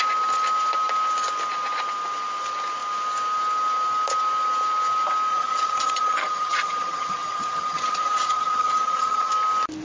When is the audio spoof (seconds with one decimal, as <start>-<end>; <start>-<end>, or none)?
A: 5.3-9.3